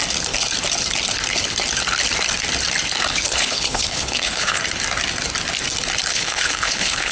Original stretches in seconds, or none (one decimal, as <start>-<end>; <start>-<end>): 0.0-3.1; 4.6-6.1